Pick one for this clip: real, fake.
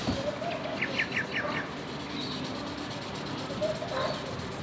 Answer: real